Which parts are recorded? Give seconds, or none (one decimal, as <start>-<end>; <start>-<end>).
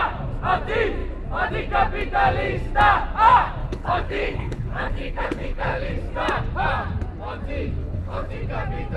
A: 0.0-3.6; 5.9-7.8; 8.3-9.0